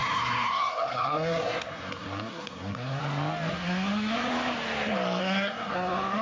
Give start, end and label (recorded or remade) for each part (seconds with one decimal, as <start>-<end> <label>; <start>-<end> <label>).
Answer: 0.0-3.0 remade; 3.0-3.5 recorded; 3.5-4.3 remade; 4.3-5.2 recorded; 5.2-6.2 remade